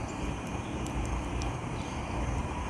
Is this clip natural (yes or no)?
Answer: no